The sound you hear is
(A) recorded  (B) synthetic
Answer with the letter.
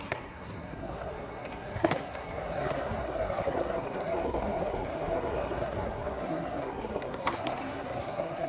B